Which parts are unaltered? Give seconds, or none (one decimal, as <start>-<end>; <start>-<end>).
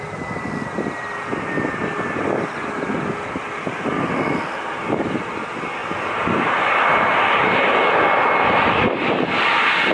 0.0-9.9